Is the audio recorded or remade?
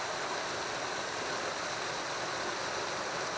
recorded